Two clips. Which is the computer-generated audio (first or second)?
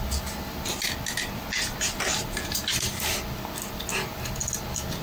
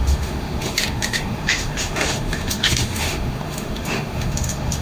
second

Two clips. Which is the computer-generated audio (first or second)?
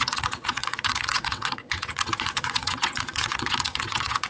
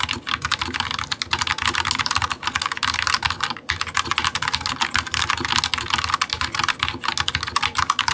first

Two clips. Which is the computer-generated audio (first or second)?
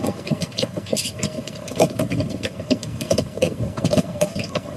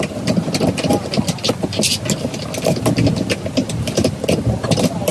first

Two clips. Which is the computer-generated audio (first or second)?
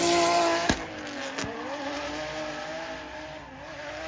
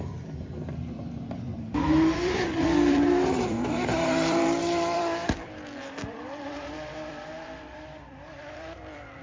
second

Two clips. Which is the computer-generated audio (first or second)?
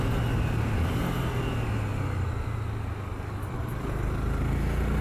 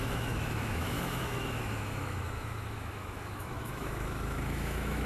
second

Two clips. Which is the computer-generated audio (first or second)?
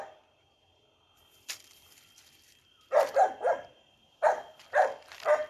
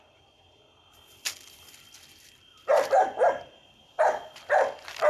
first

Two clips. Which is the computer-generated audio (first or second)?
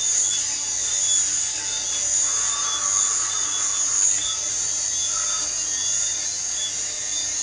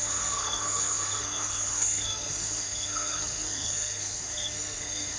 second